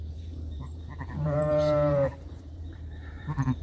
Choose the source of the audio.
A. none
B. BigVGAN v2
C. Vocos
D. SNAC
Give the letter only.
B